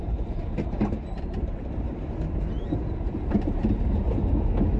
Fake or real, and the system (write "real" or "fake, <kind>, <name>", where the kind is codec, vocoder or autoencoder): fake, vocoder, BigVGAN v2